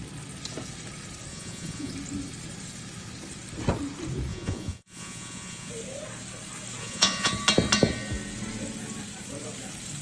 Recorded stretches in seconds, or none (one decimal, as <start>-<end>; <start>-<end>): 0.0-1.3; 1.9-4.3; 5.7-6.8; 7.3-10.0